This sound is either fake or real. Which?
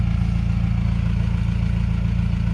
real